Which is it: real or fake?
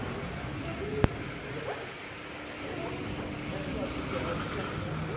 real